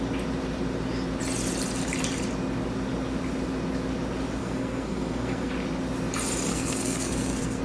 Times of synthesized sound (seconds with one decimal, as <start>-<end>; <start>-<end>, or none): 4.4-5.5; 6.5-7.6